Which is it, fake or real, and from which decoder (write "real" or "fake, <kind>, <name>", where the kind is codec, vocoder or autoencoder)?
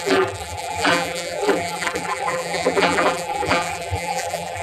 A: fake, vocoder, BigVGAN v2